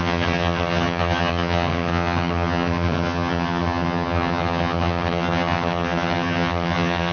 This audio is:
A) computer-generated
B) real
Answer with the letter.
A